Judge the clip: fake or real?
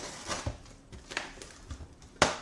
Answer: real